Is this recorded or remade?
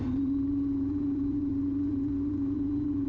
remade